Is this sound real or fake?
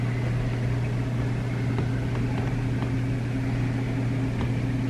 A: real